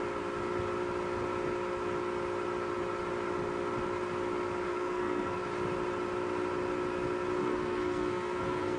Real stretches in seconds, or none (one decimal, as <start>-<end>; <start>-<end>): 0.0-4.7; 5.4-7.4